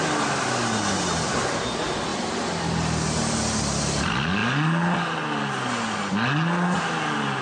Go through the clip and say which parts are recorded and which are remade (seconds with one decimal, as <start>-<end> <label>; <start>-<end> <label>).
0.0-7.4 recorded